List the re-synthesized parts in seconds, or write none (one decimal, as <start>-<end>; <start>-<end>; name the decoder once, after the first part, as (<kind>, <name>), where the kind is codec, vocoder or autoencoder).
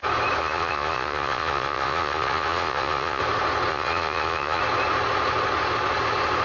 0.4-3.2 (vocoder, Vocos); 3.7-4.6